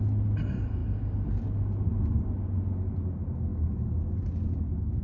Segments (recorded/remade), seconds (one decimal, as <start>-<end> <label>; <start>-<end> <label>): 0.0-5.0 recorded